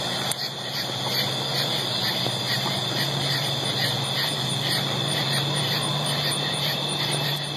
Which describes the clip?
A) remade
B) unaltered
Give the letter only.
A